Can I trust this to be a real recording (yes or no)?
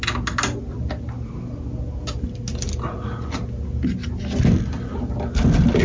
yes